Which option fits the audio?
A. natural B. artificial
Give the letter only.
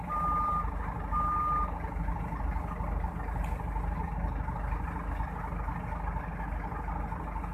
A